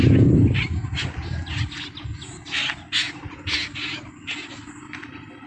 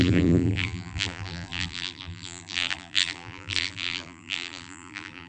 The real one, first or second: first